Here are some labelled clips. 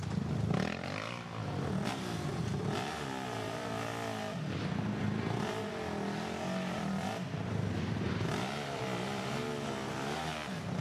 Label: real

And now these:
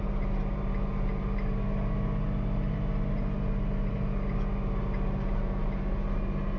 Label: real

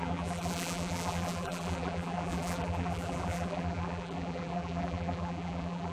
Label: fake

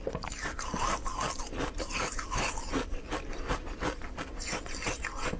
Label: real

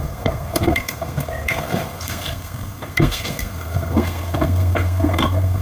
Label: fake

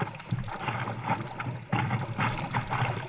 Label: real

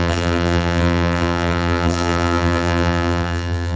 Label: fake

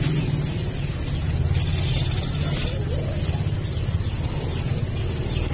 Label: real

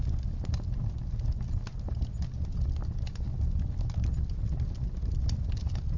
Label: real